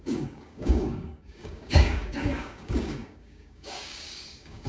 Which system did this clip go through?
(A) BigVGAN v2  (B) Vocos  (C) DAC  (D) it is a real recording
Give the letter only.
C